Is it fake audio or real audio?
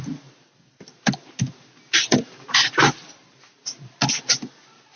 real